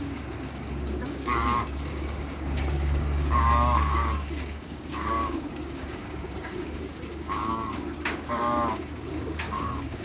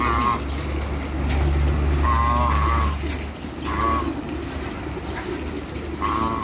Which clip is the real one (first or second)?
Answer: second